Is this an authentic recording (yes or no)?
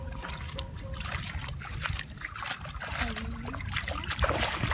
yes